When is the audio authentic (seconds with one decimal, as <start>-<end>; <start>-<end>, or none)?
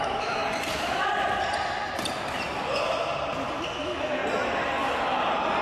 0.4-3.8; 4.2-5.6